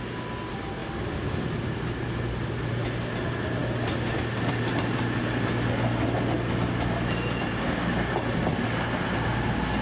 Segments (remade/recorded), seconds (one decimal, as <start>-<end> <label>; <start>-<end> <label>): 0.0-9.8 recorded